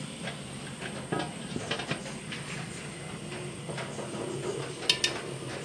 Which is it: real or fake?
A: real